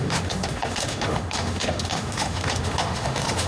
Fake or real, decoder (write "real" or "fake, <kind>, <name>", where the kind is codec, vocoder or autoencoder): fake, autoencoder, DAC-VAE